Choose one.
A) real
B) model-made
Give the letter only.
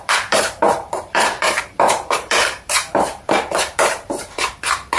B